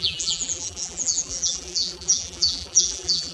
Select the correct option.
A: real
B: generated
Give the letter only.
B